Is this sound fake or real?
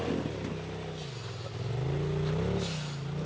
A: real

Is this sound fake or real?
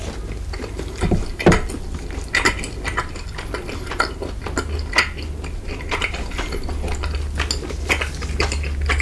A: real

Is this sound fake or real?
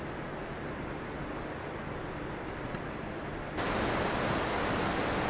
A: real